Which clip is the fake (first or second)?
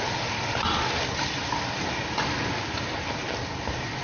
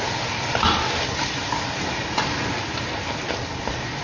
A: second